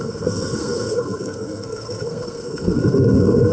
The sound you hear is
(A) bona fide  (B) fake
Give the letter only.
B